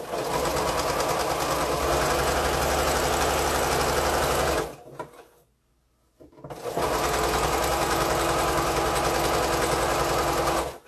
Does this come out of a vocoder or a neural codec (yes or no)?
no